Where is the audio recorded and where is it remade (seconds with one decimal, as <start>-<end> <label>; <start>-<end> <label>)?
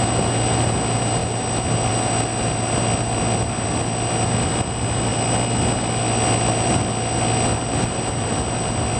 0.0-9.0 recorded